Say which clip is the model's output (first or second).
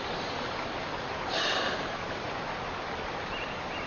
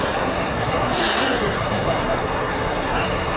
second